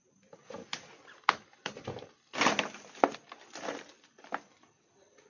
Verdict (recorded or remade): recorded